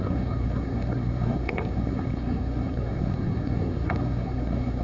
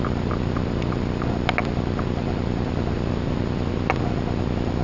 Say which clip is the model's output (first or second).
first